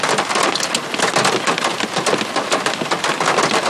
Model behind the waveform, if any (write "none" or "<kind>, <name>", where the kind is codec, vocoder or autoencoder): none